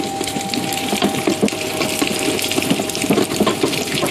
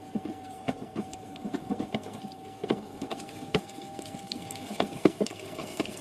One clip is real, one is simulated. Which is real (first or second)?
first